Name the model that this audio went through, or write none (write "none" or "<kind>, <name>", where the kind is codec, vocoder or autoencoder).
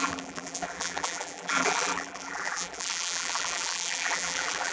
vocoder, BigVGAN v2